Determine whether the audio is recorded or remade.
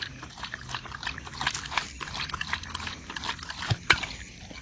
recorded